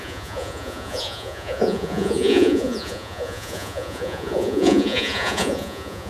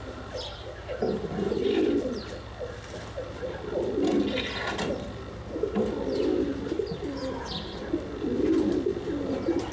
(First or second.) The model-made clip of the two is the first